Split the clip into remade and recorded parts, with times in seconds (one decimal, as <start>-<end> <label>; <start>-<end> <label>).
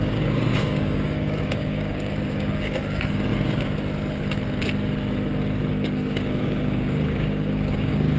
0.0-3.3 remade; 3.3-5.7 recorded; 5.7-8.2 remade